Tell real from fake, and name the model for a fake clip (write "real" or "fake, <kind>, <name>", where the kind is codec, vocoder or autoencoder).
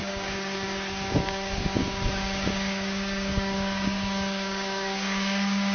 fake, codec, DAC